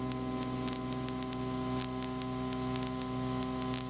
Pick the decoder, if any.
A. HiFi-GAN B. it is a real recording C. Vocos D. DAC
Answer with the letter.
B